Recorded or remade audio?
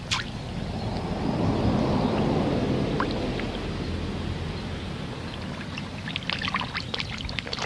recorded